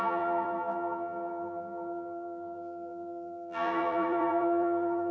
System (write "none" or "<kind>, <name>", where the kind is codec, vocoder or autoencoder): vocoder, BigVGAN v2